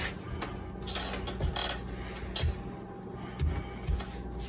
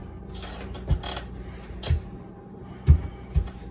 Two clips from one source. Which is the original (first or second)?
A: first